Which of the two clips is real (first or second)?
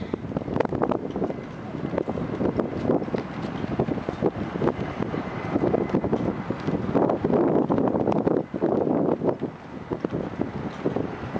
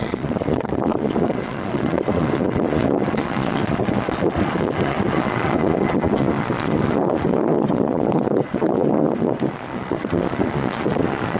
first